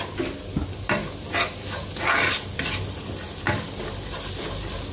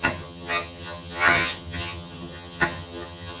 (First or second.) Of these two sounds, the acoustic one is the first